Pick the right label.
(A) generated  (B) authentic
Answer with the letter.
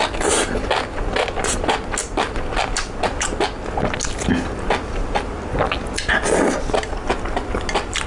B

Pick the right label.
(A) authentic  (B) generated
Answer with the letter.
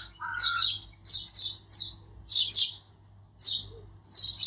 A